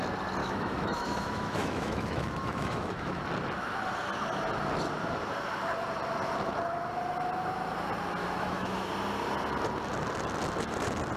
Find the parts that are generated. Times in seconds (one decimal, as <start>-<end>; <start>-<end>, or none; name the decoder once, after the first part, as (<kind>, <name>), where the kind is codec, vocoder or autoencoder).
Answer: 0.4-3.2 (autoencoder, DAC-VAE); 8.2-8.9